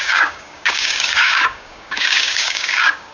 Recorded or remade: remade